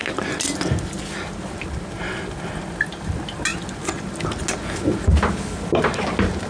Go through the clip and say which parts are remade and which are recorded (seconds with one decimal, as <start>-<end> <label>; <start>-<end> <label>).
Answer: 0.0-6.5 recorded